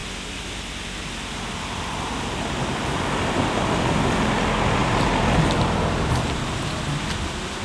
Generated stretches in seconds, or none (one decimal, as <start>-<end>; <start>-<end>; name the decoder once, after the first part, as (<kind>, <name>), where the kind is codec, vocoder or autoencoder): 4.8-6.7 (vocoder, BigVGAN v2)

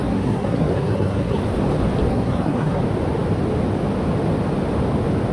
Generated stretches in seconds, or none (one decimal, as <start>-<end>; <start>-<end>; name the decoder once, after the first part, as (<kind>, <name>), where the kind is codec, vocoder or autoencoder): 0.0-1.4 (codec, SNAC); 2.1-2.8